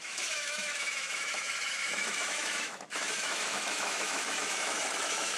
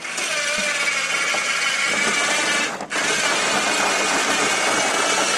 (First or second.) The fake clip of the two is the first